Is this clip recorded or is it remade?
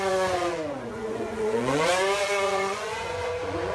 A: remade